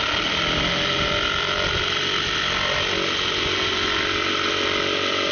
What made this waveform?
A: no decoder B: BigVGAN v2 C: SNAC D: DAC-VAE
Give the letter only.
A